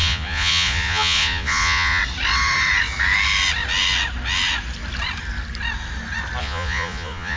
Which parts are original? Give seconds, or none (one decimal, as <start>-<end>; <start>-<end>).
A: 2.0-6.4

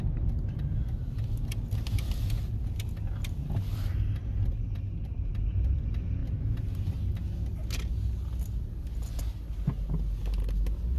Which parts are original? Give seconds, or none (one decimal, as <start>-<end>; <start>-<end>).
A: 0.0-11.0